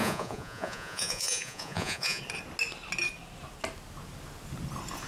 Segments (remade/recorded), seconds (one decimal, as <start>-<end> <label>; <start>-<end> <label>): 0.0-2.2 remade; 2.2-5.1 recorded